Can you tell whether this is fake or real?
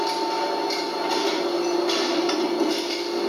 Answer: real